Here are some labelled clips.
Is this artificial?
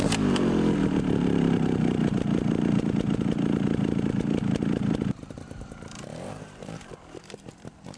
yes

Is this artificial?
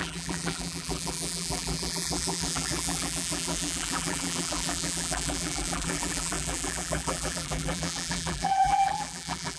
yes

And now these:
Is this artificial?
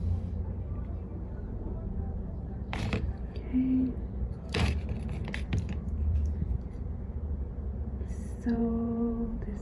yes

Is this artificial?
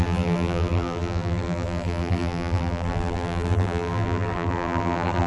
yes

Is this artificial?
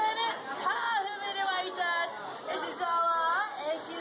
no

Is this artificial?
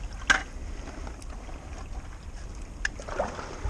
no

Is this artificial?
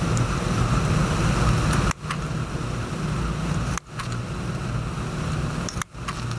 no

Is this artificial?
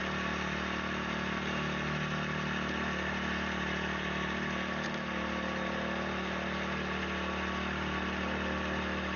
no